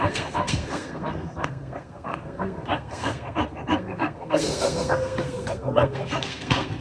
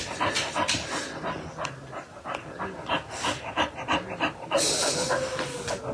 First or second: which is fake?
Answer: first